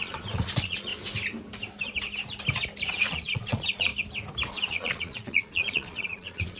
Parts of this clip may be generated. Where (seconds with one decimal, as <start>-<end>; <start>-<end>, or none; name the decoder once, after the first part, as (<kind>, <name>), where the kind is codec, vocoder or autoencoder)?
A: 0.0-0.9 (vocoder, Vocos); 2.9-3.9; 4.5-6.6